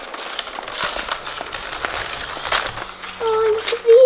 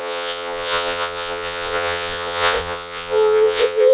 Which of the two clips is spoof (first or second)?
second